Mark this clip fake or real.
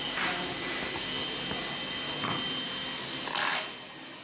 real